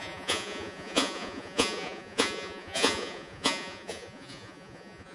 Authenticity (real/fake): fake